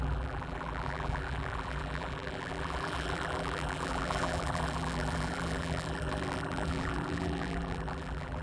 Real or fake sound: fake